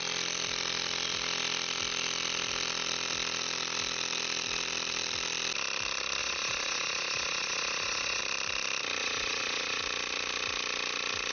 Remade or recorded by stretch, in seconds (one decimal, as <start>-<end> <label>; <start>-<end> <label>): 0.0-6.2 recorded; 6.2-8.2 remade; 8.2-9.0 recorded; 9.0-9.8 remade; 9.8-11.3 recorded